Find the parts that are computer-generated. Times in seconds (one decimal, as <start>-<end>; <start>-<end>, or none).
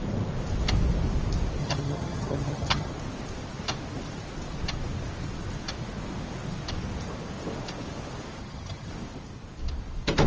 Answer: 1.6-2.9; 8.4-8.9